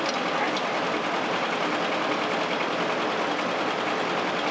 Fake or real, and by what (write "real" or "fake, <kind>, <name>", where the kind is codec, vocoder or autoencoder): real